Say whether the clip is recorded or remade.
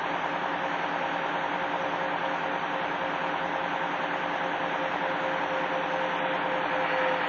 recorded